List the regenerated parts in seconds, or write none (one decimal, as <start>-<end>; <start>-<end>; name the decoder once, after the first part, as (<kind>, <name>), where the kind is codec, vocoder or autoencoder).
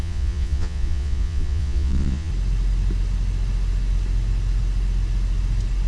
0.0-2.3 (vocoder, Vocos)